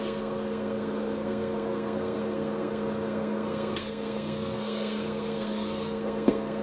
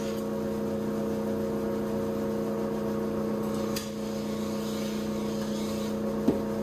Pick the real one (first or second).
second